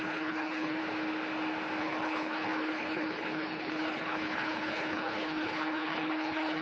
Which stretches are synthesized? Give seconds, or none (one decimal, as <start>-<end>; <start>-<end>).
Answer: 0.0-0.8; 1.8-6.6